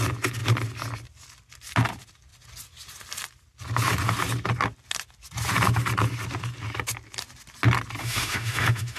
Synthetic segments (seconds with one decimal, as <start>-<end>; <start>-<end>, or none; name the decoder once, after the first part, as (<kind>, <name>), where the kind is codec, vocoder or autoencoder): 8.0-9.0 (autoencoder, DAC-VAE)